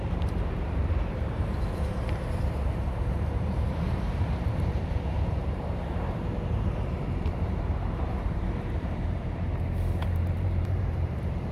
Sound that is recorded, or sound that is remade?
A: remade